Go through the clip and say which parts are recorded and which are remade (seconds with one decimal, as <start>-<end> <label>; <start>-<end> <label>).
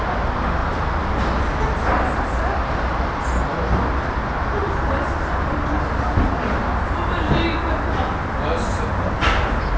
0.0-9.8 recorded